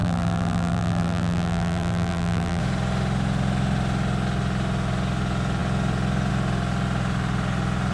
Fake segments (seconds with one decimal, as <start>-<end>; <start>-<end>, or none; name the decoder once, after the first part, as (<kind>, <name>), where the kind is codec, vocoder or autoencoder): 0.0-2.6 (vocoder, BigVGAN v2)